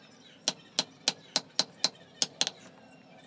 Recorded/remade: recorded